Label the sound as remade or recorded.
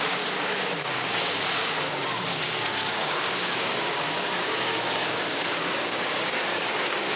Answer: remade